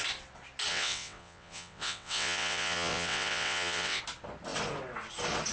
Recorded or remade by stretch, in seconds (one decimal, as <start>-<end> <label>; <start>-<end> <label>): 0.0-0.7 recorded; 0.7-4.0 remade; 4.0-5.5 recorded